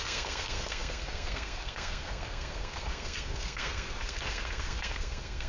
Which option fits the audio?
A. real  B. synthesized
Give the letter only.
B